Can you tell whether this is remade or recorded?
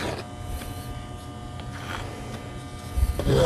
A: recorded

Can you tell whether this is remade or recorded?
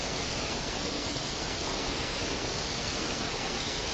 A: remade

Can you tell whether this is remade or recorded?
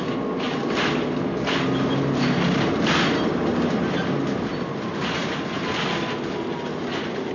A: recorded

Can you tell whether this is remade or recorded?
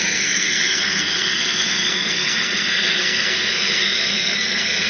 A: remade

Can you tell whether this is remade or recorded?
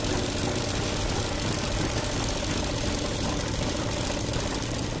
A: recorded